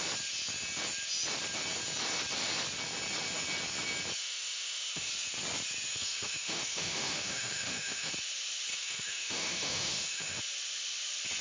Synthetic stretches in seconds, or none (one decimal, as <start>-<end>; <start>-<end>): 4.2-5.1; 5.9-8.1; 8.7-10.4